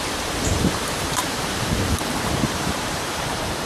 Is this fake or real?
fake